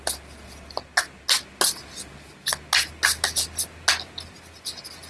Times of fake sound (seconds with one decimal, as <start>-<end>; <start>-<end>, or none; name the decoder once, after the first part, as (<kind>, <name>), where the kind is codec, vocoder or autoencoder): none